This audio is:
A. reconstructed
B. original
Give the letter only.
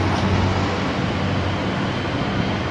B